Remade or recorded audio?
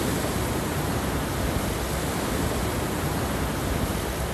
recorded